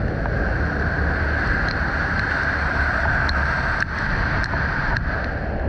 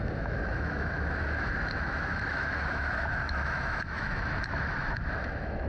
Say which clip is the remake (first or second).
second